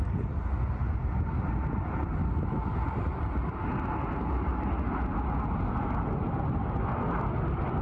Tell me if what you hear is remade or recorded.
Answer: recorded